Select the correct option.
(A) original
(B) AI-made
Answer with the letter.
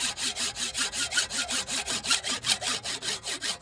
A